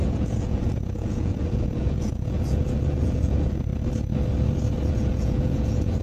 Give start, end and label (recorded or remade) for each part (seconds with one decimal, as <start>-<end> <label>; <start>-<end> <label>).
0.0-3.7 remade; 3.7-4.9 recorded; 4.9-6.0 remade